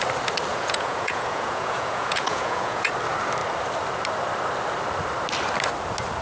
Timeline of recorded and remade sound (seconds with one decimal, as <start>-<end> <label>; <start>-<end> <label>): 0.0-0.5 recorded; 0.5-2.9 remade; 2.9-6.2 recorded